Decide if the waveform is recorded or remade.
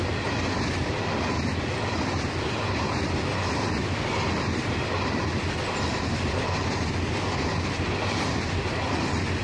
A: recorded